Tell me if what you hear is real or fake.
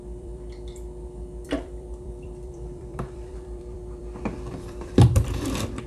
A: fake